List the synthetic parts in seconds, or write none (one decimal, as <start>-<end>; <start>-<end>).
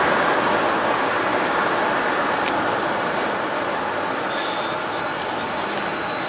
1.3-1.8